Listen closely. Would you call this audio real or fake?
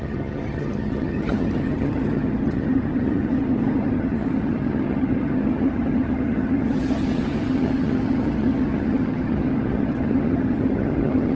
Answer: fake